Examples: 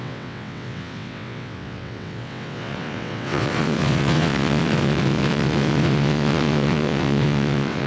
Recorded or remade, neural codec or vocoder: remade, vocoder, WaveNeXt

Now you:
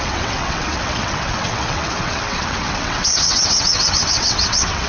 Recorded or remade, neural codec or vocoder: remade, vocoder, WaveNeXt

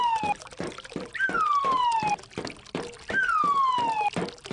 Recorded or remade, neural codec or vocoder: recorded